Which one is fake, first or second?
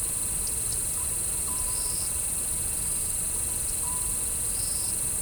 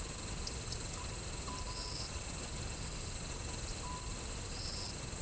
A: first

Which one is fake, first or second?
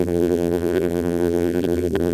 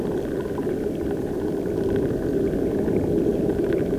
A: first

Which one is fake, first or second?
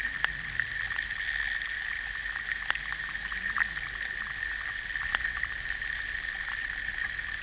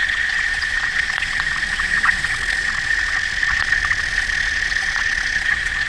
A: second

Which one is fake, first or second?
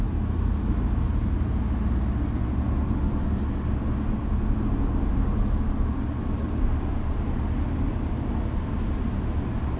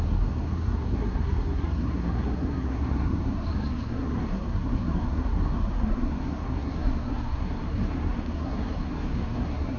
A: second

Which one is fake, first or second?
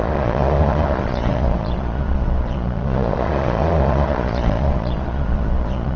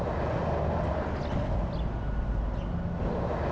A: first